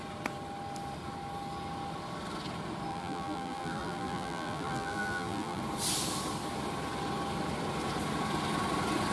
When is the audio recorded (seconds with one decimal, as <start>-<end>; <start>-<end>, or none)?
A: 0.0-2.9; 5.6-9.1